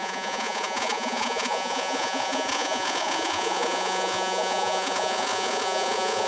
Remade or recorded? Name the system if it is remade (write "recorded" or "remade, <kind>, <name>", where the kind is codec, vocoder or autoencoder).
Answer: remade, vocoder, Vocos